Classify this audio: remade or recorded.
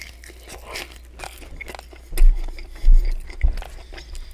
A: recorded